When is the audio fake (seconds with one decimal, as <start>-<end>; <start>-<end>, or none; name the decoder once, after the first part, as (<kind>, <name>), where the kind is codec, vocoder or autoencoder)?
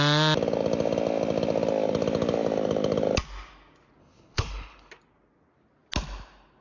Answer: 4.0-4.9 (codec, HILCodec)